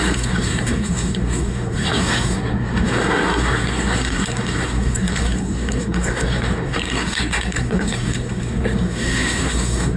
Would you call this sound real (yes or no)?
no